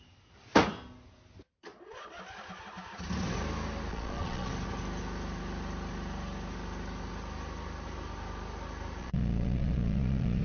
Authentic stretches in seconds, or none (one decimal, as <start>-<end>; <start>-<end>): 0.0-1.7; 2.2-3.9; 4.5-9.0